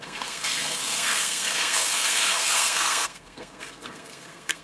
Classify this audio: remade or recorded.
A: remade